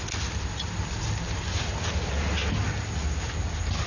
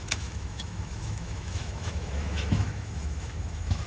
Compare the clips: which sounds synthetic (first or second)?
second